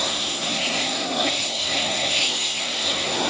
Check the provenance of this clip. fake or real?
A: fake